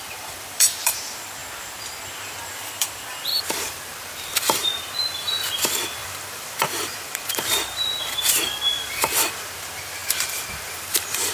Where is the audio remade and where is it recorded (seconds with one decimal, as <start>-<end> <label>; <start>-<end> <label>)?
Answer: 0.0-1.4 remade; 1.4-2.5 recorded; 2.5-3.3 remade; 3.3-4.4 recorded; 4.4-11.3 remade